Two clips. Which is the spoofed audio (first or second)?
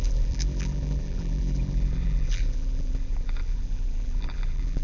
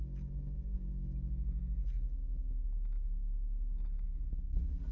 first